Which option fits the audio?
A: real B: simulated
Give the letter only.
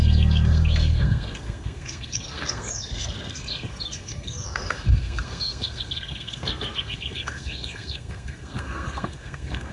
B